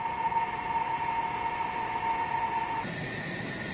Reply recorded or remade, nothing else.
recorded